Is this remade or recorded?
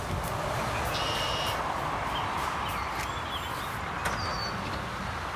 recorded